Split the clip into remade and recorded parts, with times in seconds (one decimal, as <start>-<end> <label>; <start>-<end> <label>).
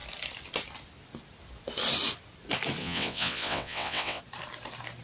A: 0.0-2.8 recorded; 2.8-4.2 remade; 4.2-5.0 recorded